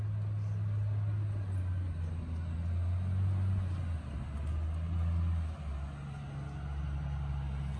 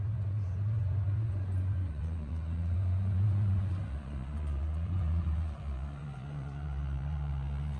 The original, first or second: first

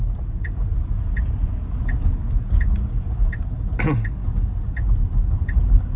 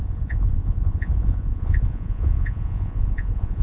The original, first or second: first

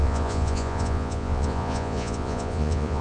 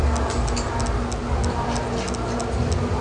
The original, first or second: second